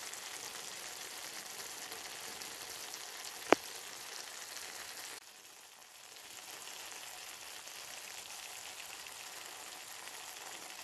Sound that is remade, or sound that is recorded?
recorded